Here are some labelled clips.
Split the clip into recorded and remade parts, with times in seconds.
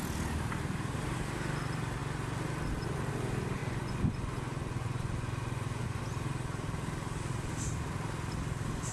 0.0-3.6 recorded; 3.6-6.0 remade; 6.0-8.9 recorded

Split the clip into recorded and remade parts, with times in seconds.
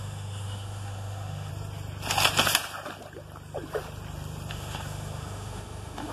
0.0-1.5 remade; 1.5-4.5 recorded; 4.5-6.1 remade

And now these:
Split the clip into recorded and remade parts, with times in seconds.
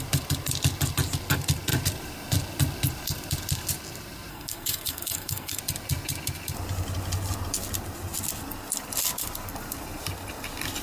0.0-4.3 recorded; 4.3-5.6 remade; 5.6-10.8 recorded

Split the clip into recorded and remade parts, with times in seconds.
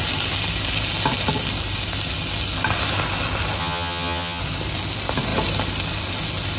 0.0-3.6 recorded; 3.6-4.4 remade; 4.4-6.6 recorded